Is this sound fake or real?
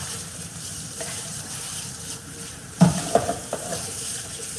fake